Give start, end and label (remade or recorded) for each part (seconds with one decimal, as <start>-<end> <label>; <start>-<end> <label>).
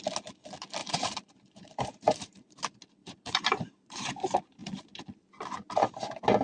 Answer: 0.0-0.8 recorded; 0.8-2.6 remade; 2.6-3.0 recorded; 3.0-4.1 remade; 4.1-6.4 recorded